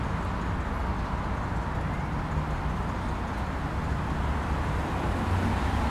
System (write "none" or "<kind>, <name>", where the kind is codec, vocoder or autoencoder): none